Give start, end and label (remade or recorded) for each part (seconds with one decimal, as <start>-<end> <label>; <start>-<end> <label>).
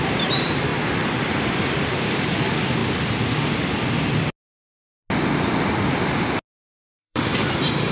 0.0-0.7 remade; 0.7-1.3 recorded; 1.3-2.8 remade; 2.8-6.5 recorded; 6.5-7.9 remade